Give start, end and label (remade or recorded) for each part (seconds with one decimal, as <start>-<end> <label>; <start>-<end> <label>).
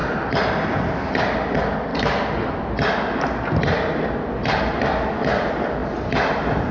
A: 0.0-6.7 recorded